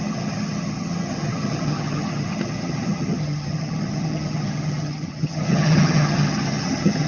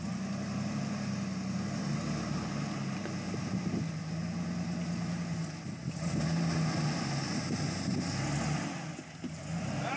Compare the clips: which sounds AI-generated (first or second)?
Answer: first